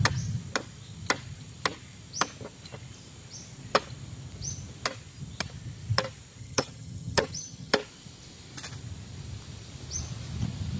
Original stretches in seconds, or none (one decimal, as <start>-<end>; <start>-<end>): 0.0-6.4; 7.7-10.8